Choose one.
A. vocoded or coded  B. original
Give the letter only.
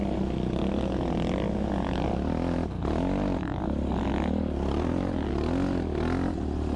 B